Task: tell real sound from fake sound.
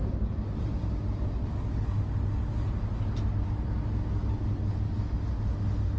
real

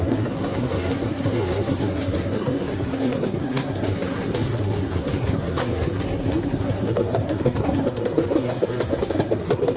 fake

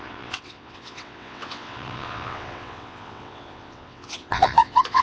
fake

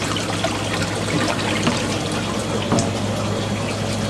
real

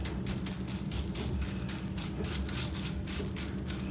real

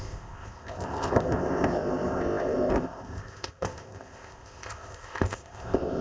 fake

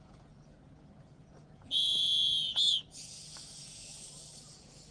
fake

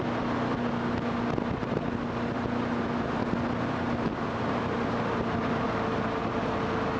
real